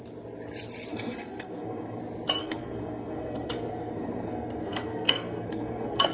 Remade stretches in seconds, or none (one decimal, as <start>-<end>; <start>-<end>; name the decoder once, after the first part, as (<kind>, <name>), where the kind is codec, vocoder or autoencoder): 0.9-2.0 (codec, SNAC); 2.4-6.1